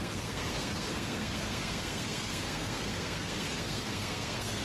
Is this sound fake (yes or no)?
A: yes